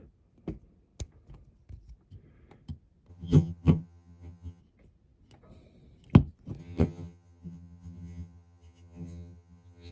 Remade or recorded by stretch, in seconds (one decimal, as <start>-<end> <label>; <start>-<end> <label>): 0.0-3.1 recorded; 3.1-4.6 remade; 4.6-6.6 recorded; 6.6-9.9 remade